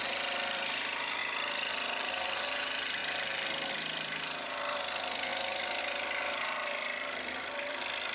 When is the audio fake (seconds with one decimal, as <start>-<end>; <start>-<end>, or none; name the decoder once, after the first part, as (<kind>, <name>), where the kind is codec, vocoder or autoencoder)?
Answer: 0.0-3.0 (vocoder, BigVGAN v2); 3.7-8.1